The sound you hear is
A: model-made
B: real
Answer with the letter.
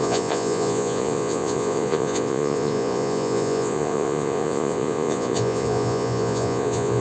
A